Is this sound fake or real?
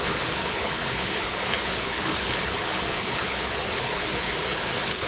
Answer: fake